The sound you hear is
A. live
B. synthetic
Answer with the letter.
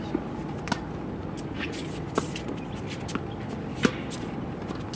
A